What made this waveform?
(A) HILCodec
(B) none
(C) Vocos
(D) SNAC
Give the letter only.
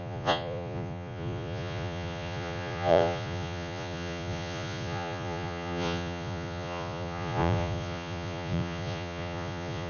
C